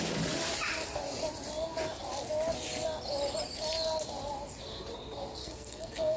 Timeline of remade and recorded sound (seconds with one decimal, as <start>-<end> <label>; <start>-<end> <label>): 0.0-5.4 recorded; 5.4-6.2 remade